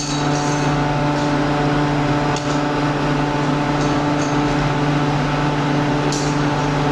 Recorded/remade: recorded